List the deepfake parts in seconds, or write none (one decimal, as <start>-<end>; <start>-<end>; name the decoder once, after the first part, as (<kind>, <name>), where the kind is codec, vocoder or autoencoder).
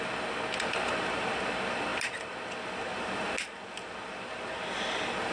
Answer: none